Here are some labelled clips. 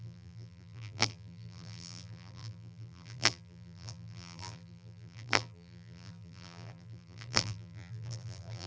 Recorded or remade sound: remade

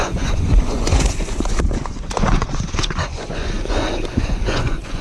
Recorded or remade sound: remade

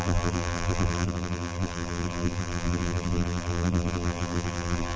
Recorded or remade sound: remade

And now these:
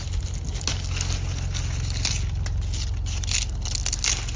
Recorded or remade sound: recorded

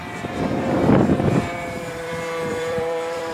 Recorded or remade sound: remade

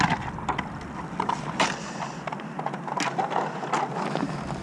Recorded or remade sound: recorded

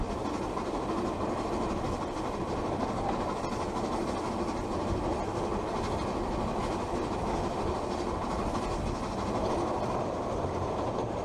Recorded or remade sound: recorded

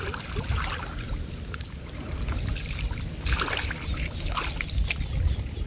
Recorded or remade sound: recorded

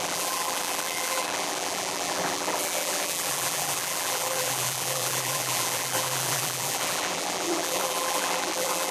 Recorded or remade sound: remade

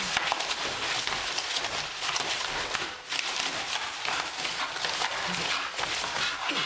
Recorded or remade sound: recorded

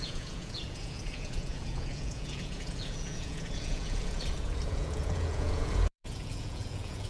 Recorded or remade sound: remade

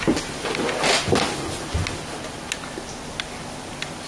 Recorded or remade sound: recorded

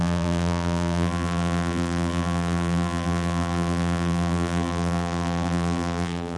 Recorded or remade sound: remade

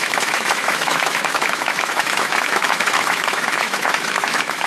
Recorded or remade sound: remade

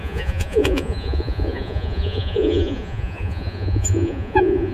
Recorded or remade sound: remade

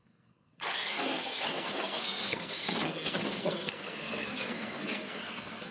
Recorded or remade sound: remade